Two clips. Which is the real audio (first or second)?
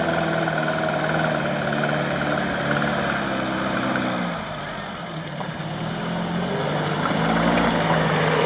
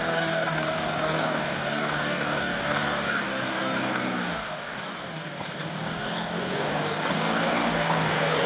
first